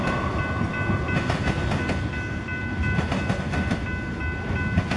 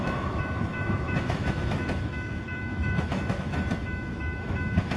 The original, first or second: first